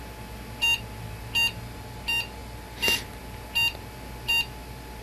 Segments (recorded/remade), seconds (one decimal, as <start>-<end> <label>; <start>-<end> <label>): 0.0-5.0 recorded